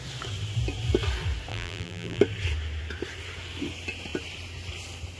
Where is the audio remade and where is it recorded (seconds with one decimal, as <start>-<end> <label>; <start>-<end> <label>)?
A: 0.0-1.5 recorded; 1.5-2.2 remade; 2.2-5.2 recorded